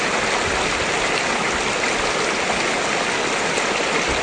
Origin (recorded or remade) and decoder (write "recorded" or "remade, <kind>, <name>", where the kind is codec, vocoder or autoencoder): recorded